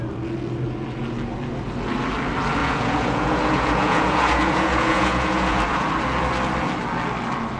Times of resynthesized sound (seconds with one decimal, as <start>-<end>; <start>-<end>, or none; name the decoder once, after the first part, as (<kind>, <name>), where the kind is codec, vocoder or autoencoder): 2.6-5.9 (vocoder, Vocos)